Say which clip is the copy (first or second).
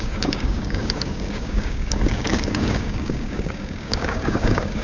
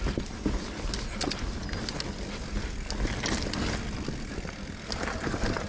first